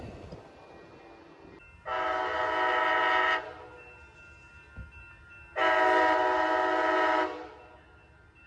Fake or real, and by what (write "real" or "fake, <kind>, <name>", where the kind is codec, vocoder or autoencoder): real